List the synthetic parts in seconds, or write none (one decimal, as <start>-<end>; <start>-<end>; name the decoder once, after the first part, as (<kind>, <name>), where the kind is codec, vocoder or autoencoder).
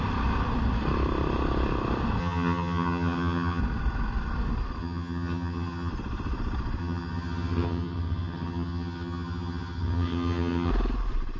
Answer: 2.2-3.6 (vocoder, HiFi-GAN); 4.8-5.9; 6.8-10.7